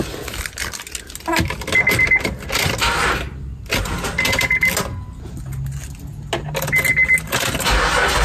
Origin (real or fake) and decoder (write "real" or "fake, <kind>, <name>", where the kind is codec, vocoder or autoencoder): real